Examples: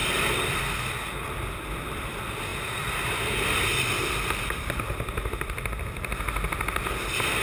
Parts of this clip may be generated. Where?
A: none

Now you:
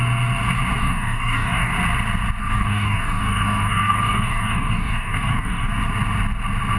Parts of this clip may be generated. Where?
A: 0.8-1.7 (codec, DAC); 2.4-5.7